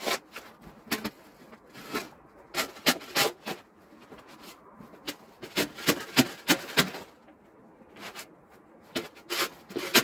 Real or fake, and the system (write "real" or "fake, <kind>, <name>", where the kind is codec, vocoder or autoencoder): real